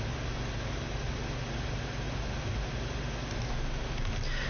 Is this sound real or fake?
real